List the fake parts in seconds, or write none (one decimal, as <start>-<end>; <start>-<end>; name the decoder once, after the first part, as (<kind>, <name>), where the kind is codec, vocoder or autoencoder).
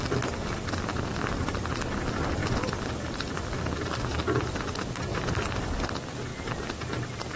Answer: none